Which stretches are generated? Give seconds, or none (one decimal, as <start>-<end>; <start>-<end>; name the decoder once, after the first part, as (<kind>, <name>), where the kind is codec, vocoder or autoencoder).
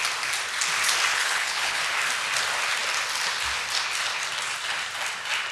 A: 1.1-1.8 (codec, HILCodec)